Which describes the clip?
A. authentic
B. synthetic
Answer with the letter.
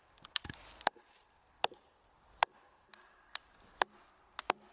A